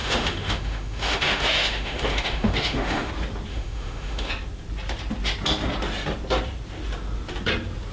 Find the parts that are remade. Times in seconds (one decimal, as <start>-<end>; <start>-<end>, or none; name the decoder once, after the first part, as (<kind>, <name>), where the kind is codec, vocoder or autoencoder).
0.0-3.1 (autoencoder, DAC-VAE); 3.5-4.3